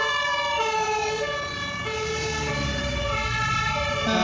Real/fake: fake